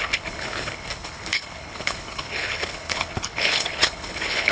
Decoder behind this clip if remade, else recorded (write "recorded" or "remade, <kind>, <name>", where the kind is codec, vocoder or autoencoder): remade, codec, HILCodec